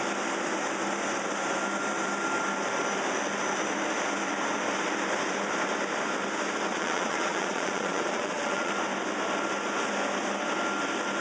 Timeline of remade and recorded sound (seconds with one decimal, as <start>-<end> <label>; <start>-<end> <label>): 0.0-6.7 recorded; 6.7-8.7 remade; 8.7-11.2 recorded